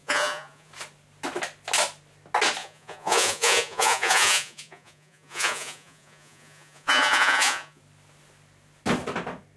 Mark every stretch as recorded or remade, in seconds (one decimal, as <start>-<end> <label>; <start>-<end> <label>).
0.0-0.7 remade; 0.7-2.6 recorded; 2.6-7.8 remade; 7.8-9.6 recorded